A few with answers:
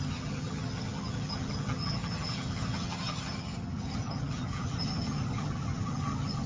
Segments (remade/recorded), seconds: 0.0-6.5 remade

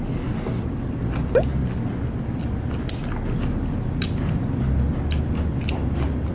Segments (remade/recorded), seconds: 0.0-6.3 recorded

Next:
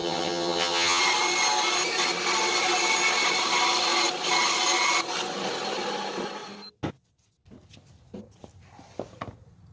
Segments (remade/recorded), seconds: 0.0-1.0 remade; 1.0-9.7 recorded

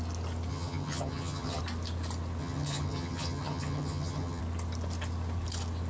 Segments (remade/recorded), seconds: 0.0-0.5 recorded; 0.5-1.6 remade; 1.6-2.4 recorded; 2.4-4.4 remade; 4.4-5.9 recorded

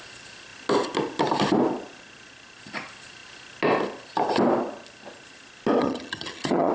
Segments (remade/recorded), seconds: 0.0-5.8 recorded; 5.8-6.7 remade

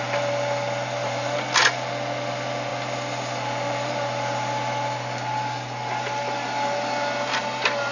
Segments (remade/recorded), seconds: 0.0-7.9 recorded

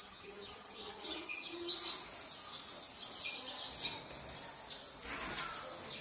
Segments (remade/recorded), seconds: 0.0-1.7 remade; 1.7-6.0 recorded

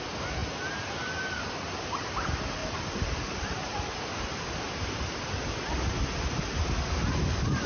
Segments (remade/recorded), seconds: 0.0-7.7 recorded